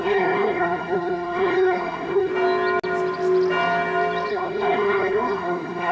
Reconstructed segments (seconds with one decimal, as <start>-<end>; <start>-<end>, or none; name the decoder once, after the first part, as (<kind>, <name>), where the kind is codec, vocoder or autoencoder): 0.0-2.3 (codec, SNAC); 4.3-5.9